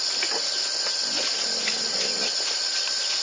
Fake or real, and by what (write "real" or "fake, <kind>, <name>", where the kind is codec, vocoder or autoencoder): real